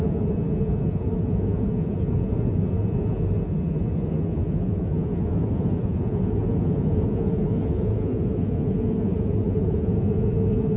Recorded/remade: remade